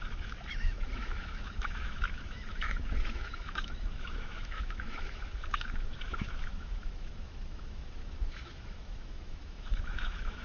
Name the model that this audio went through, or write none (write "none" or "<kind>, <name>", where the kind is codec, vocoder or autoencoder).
autoencoder, DAC-VAE